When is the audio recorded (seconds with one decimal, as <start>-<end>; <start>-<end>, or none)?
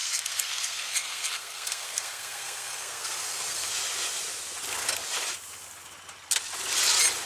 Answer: 3.7-7.3